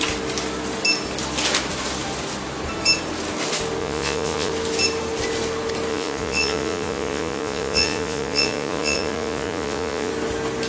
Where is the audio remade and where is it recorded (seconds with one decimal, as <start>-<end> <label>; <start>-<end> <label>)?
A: 0.0-3.8 recorded; 3.8-4.5 remade; 4.5-5.9 recorded; 5.9-10.1 remade; 10.1-10.7 recorded